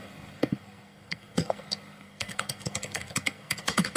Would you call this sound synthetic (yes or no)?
yes